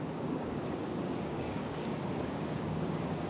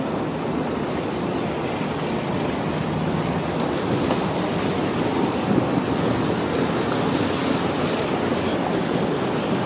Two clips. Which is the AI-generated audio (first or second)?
first